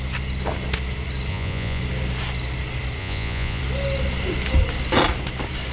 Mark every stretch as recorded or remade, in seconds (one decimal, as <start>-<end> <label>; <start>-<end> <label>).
0.0-1.3 recorded; 1.3-1.8 remade; 1.8-3.0 recorded; 3.0-3.6 remade; 3.6-5.7 recorded